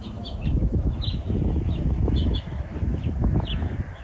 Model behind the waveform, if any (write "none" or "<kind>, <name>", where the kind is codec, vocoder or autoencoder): autoencoder, DAC-VAE